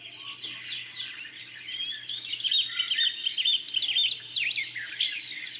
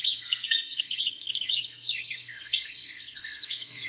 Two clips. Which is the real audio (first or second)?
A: first